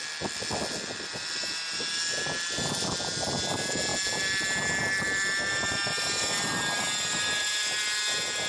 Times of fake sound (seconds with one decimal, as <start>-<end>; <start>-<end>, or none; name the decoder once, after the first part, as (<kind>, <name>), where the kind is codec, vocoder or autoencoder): none

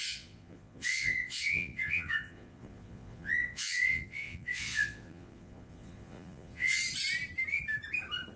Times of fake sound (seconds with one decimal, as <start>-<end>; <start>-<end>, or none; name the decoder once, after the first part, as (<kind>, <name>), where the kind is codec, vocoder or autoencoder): 0.0-6.8 (vocoder, Vocos)

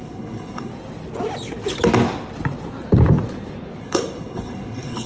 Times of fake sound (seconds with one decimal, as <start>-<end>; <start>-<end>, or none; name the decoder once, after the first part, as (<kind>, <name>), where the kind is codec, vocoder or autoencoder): 0.0-0.7 (codec, HILCodec); 3.8-5.1

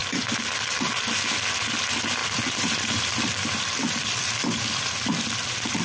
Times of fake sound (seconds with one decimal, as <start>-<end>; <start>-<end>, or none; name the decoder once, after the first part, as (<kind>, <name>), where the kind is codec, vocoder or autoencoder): 0.0-0.7 (vocoder, BigVGAN v2); 2.2-5.8

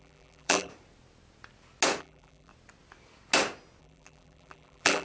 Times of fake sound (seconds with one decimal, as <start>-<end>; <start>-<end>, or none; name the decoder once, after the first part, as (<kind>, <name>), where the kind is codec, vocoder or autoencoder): 0.0-0.7 (vocoder, BigVGAN v2); 2.0-2.5; 3.8-5.0